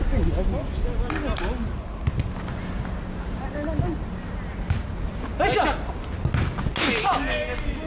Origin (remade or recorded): recorded